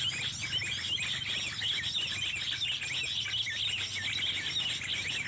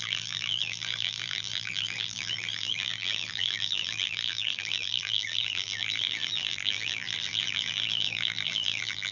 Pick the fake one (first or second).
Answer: second